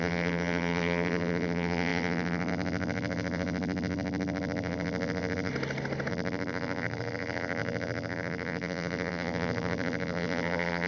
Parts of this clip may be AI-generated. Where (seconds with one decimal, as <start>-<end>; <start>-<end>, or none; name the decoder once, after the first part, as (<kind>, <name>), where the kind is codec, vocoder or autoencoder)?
0.0-5.5 (vocoder, BigVGAN v2); 6.1-10.9

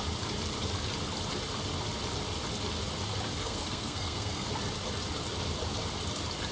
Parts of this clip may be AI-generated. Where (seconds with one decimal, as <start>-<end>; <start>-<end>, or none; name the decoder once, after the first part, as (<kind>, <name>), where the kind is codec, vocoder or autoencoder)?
3.4-4.5 (codec, SNAC)

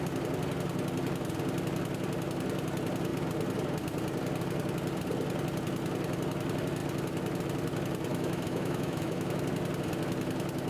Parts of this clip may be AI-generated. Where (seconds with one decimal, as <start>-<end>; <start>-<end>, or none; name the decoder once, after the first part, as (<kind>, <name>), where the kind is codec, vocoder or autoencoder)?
8.1-9.4 (autoencoder, DAC-VAE)

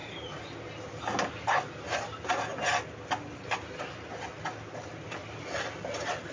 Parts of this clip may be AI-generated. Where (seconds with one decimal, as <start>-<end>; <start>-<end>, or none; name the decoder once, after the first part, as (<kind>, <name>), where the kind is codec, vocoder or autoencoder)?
none

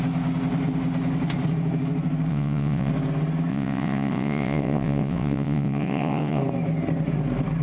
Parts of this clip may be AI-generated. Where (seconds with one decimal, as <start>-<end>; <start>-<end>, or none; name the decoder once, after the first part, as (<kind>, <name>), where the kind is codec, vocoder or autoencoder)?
2.3-2.9 (vocoder, WaveNeXt); 3.5-6.4

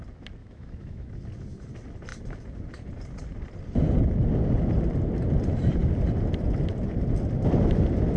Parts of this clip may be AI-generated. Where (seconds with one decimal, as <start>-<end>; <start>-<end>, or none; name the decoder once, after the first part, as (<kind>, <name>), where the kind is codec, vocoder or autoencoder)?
0.4-1.1 (autoencoder, DAC-VAE)

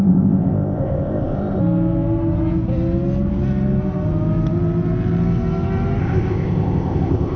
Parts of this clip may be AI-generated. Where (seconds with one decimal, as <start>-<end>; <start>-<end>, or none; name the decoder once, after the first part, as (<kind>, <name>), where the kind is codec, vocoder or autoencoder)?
0.0-1.6 (codec, ZipCodec); 6.0-7.4